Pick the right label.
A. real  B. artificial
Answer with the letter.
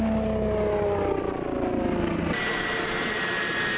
A